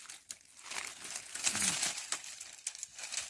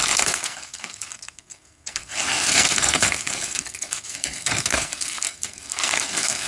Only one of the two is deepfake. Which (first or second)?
second